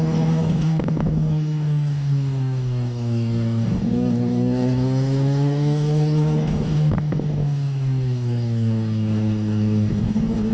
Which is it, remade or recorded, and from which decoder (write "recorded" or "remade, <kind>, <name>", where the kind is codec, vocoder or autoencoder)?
remade, codec, DAC